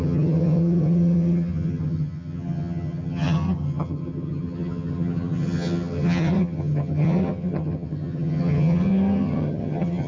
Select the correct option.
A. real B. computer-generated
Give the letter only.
B